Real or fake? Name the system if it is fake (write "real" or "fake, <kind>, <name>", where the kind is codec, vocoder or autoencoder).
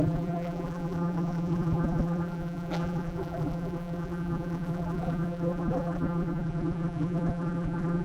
fake, vocoder, BigVGAN v2